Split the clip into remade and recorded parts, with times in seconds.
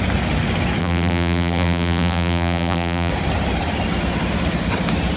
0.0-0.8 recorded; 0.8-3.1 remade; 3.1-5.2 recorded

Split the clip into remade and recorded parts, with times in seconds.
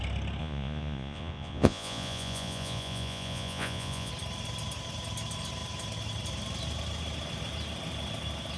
0.0-0.4 recorded; 0.4-4.1 remade; 4.1-8.6 recorded